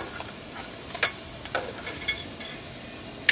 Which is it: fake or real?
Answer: real